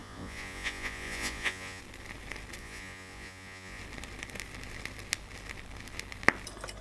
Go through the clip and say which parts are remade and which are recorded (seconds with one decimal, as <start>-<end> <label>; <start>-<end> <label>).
0.0-1.8 remade; 1.8-2.6 recorded; 2.6-3.8 remade; 3.8-6.8 recorded

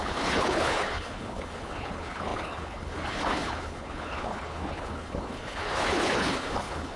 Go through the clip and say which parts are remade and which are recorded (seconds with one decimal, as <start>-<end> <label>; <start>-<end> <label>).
0.0-7.0 remade

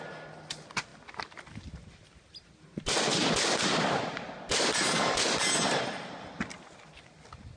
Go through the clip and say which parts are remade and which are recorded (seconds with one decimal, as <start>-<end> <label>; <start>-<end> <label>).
0.0-7.6 recorded

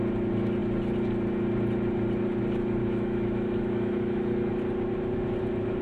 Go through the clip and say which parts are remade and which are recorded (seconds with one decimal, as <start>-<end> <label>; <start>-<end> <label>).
0.0-2.8 recorded; 2.8-4.5 remade; 4.5-5.8 recorded

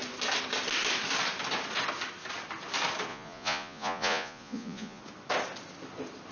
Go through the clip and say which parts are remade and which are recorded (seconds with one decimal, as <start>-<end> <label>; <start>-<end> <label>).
0.0-3.1 recorded; 3.1-5.0 remade; 5.0-6.3 recorded

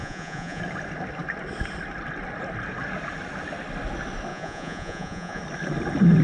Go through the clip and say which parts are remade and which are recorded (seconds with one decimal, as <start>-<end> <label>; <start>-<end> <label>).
0.0-0.6 remade; 0.6-4.3 recorded; 4.3-5.4 remade; 5.4-6.2 recorded

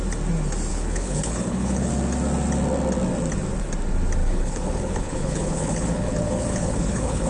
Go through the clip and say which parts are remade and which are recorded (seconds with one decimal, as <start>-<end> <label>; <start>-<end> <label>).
0.0-0.7 recorded; 0.7-1.9 remade; 1.9-4.2 recorded; 4.2-7.3 remade